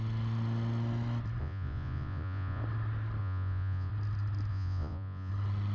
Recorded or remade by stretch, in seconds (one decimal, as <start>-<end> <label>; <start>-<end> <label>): 0.0-1.4 recorded; 1.4-2.6 remade; 2.6-3.2 recorded; 3.2-3.9 remade; 3.9-4.5 recorded; 4.5-5.3 remade; 5.3-5.7 recorded